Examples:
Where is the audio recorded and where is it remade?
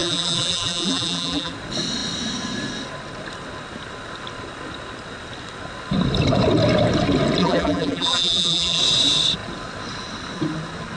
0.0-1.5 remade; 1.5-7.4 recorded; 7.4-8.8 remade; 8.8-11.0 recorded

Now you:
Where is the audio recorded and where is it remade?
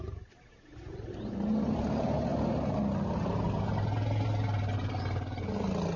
0.0-6.0 recorded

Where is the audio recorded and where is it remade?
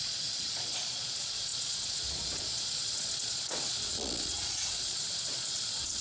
0.0-6.0 remade